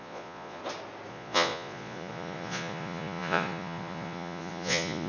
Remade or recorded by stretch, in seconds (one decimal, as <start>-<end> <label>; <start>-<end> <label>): 0.0-0.6 remade; 0.6-1.1 recorded; 1.1-5.1 remade